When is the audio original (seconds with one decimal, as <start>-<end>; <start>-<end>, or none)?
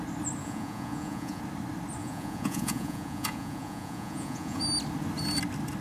0.0-0.4; 1.4-2.0; 4.6-5.8